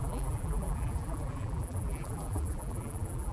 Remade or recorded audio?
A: remade